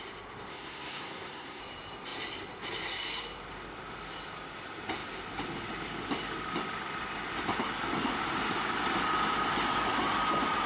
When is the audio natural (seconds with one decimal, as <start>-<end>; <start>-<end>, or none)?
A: 0.0-0.5; 1.6-10.7